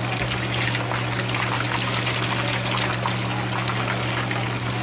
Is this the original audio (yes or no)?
yes